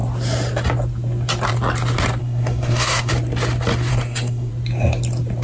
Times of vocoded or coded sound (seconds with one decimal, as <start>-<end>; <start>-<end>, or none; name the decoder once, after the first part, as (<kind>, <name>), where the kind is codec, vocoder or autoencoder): 2.2-3.1 (codec, SNAC); 3.9-4.5

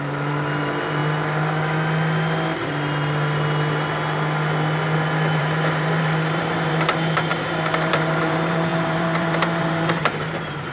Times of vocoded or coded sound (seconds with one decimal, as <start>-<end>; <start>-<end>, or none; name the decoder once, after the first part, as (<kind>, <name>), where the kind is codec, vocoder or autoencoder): 0.0-1.0 (vocoder, BigVGAN v2); 5.4-10.7

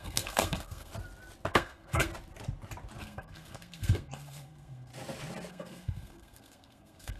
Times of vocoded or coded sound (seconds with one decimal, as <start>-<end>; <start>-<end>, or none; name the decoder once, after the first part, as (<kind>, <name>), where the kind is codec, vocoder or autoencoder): 0.0-0.9 (codec, SNAC); 1.5-2.1; 3.0-4.9; 5.5-7.2

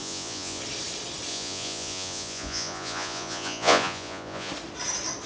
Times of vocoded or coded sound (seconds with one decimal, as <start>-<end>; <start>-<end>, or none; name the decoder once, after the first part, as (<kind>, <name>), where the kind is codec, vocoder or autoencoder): 0.0-0.6 (vocoder, Vocos); 1.3-4.5

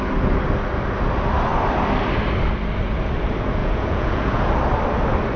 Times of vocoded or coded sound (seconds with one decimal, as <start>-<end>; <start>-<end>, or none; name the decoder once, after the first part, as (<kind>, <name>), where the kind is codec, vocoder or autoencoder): 3.6-4.5 (vocoder, Vocos)

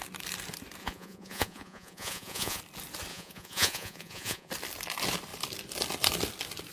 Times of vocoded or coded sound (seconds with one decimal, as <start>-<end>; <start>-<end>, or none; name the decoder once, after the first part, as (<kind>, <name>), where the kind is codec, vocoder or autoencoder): 0.8-2.6 (vocoder, Vocos); 3.1-4.5

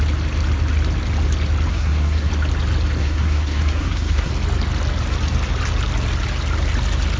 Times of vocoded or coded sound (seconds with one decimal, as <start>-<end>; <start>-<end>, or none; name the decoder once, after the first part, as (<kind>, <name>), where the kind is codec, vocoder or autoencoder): 1.7-2.3 (codec, SNAC); 3.0-4.3

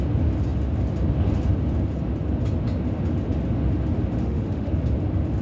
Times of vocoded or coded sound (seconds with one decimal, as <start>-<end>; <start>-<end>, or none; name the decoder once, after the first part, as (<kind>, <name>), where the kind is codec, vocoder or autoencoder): 4.2-4.7 (autoencoder, DAC-VAE)